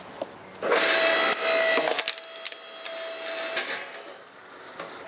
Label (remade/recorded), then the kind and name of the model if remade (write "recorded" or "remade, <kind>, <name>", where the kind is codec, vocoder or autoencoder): recorded